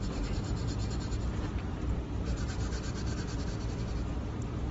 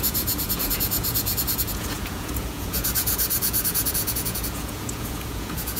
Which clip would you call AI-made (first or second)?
second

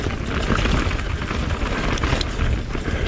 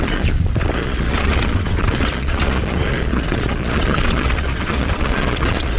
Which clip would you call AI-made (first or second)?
second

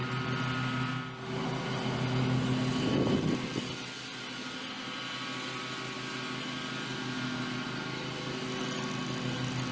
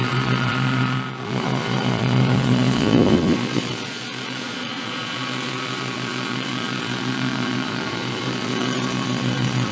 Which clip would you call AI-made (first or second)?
second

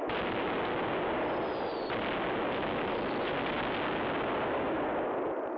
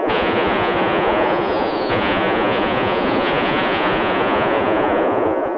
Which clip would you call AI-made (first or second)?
second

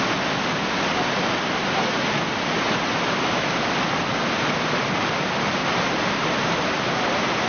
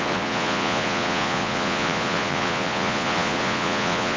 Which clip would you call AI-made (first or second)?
second